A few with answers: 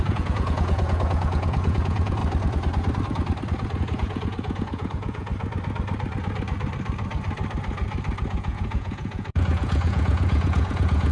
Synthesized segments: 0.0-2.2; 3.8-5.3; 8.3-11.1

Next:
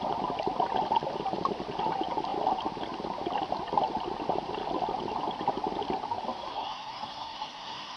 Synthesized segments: 6.5-8.0

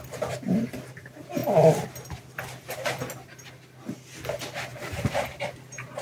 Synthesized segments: 4.7-5.3

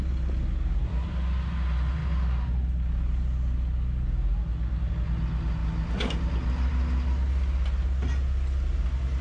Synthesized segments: none